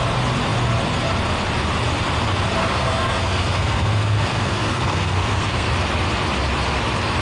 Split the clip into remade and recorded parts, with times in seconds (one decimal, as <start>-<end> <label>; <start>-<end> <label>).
0.0-2.6 recorded; 2.6-5.7 remade; 5.7-7.2 recorded